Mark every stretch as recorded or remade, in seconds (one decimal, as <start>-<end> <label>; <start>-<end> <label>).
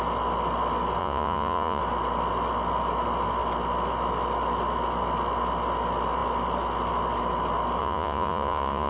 0.0-1.0 recorded; 1.0-1.8 remade; 1.8-7.8 recorded; 7.8-8.9 remade